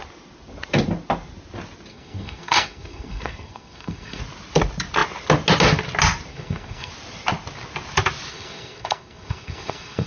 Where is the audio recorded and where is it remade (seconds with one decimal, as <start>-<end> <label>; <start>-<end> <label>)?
0.0-1.9 recorded; 1.9-4.2 remade; 4.2-6.3 recorded; 6.3-6.9 remade; 6.9-8.3 recorded; 8.3-10.1 remade

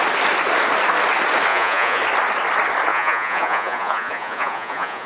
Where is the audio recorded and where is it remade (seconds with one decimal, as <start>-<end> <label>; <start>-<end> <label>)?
0.0-1.5 recorded; 1.5-2.0 remade; 2.0-2.9 recorded; 2.9-5.1 remade

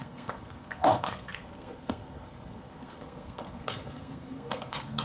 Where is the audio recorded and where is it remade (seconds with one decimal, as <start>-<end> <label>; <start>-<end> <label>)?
0.0-5.0 remade

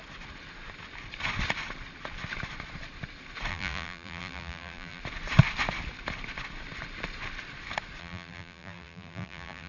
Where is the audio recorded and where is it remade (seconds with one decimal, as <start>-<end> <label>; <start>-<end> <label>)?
0.0-3.5 recorded; 3.5-5.0 remade; 5.0-8.0 recorded; 8.0-9.7 remade

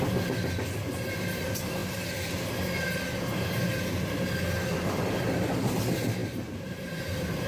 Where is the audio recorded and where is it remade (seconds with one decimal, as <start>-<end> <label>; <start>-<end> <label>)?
0.0-6.2 recorded; 6.2-7.5 remade

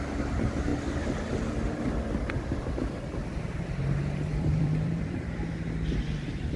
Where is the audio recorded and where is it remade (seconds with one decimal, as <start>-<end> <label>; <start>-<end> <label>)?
0.0-4.3 recorded; 4.3-5.3 remade; 5.3-6.6 recorded

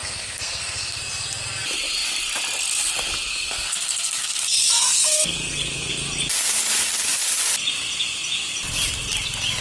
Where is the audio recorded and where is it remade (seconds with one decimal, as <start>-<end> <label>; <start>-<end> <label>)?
0.0-1.0 remade; 1.0-3.3 recorded; 3.3-5.9 remade; 5.9-9.6 recorded

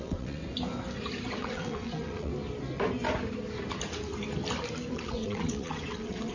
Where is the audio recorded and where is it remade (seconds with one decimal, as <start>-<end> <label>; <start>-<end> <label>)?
0.0-0.4 remade; 0.4-1.3 recorded; 1.3-2.3 remade; 2.3-4.9 recorded; 4.9-6.3 remade